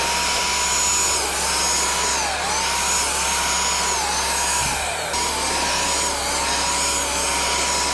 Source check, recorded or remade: recorded